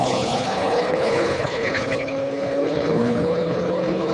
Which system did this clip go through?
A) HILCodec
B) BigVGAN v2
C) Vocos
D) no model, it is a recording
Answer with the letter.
A